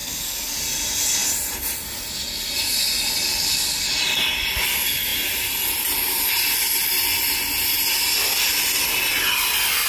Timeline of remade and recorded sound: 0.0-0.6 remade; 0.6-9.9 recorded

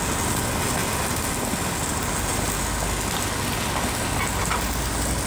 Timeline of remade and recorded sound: 0.0-5.3 recorded

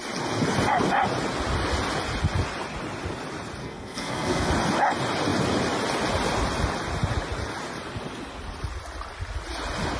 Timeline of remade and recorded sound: 0.0-3.6 recorded; 3.6-4.5 remade; 4.5-10.0 recorded

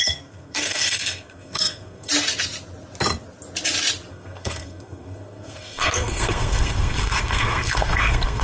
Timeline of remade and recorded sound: 0.0-2.1 remade; 2.1-4.1 recorded; 4.1-8.4 remade

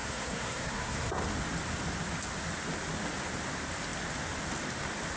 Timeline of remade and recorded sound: 0.0-1.2 remade; 1.2-5.2 recorded

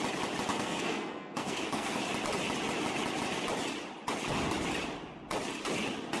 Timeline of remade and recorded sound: 0.0-0.5 recorded; 0.5-2.0 remade; 2.0-6.2 recorded

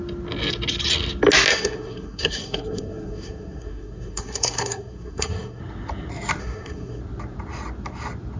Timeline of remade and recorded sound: 0.0-1.5 recorded; 1.5-5.6 remade; 5.6-6.4 recorded; 6.4-7.0 remade; 7.0-8.4 recorded

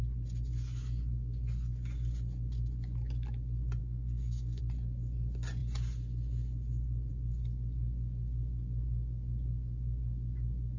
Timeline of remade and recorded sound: 0.0-3.8 recorded; 3.8-4.6 remade; 4.6-10.8 recorded